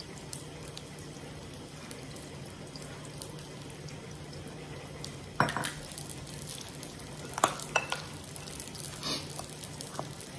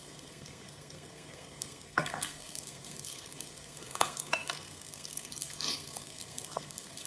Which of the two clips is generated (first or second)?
second